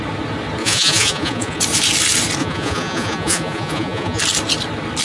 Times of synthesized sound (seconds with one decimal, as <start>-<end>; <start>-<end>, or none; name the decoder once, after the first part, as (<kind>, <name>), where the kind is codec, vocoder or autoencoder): 0.6-1.6 (vocoder, Vocos); 2.4-4.2